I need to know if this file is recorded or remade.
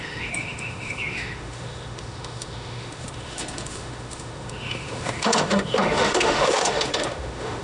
remade